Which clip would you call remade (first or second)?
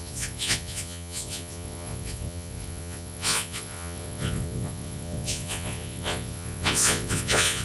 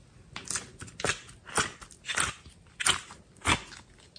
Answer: first